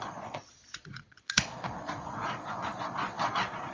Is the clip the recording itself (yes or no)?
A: no